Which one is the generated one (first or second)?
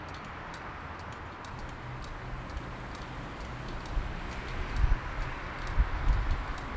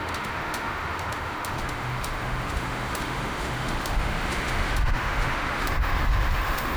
second